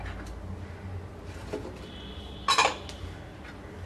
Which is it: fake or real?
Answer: real